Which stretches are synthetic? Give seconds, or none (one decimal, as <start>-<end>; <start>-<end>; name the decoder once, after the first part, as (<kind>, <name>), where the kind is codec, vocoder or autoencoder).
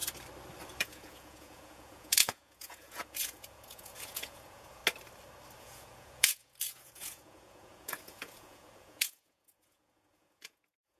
0.8-4.8 (vocoder, Vocos); 5.6-11.0